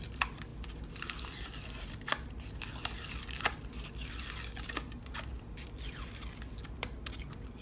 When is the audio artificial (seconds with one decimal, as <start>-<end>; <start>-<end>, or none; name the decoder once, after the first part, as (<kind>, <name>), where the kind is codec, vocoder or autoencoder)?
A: none